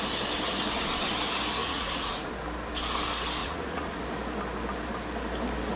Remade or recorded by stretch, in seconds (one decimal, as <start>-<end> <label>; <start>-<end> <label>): 0.0-1.6 recorded; 1.6-2.3 remade; 2.3-3.4 recorded; 3.4-4.0 remade; 4.0-5.8 recorded